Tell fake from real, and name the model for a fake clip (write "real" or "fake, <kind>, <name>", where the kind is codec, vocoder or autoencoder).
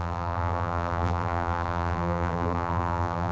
fake, vocoder, BigVGAN v2